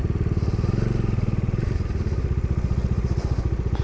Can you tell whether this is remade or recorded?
recorded